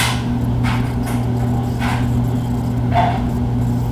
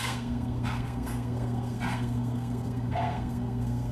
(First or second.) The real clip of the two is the first